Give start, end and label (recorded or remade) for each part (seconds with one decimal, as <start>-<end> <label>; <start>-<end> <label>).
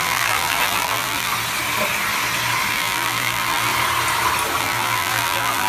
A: 0.0-1.3 remade; 1.3-2.7 recorded; 2.7-3.7 remade; 3.7-4.6 recorded; 4.6-5.7 remade